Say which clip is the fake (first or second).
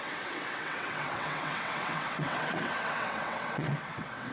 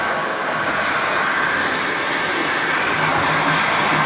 first